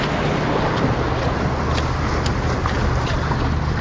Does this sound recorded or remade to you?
recorded